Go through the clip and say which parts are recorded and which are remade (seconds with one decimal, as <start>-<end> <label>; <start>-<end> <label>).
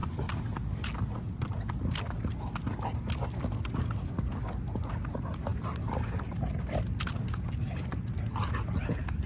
0.0-9.3 recorded